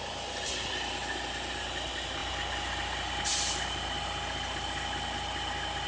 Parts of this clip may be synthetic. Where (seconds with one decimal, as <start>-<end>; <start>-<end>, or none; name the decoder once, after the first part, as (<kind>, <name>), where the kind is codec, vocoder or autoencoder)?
none